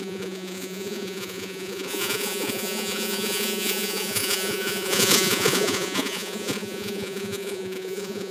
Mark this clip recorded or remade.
remade